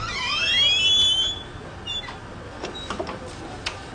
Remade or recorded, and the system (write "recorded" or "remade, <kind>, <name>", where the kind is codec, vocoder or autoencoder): recorded